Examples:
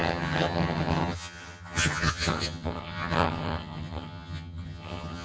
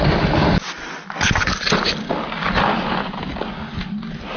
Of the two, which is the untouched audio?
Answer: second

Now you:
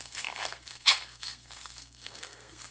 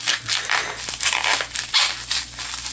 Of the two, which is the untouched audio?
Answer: second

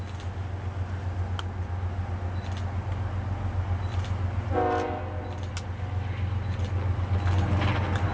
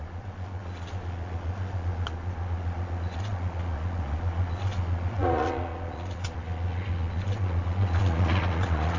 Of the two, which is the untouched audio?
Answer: first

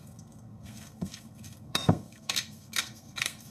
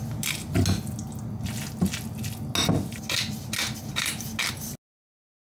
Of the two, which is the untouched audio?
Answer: second